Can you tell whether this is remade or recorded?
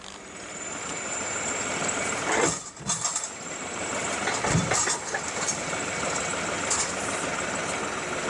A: recorded